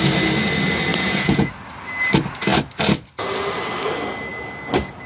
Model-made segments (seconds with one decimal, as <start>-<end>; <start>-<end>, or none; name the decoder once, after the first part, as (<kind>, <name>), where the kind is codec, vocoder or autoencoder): 0.9-1.5 (vocoder, Vocos)